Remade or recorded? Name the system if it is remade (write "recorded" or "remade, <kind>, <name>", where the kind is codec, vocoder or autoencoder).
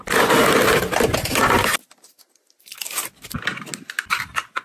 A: recorded